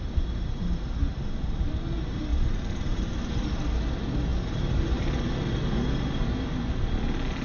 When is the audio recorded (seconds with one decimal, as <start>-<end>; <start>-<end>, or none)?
0.0-1.1; 1.9-2.3; 3.3-7.4